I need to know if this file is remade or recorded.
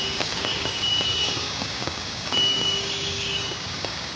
remade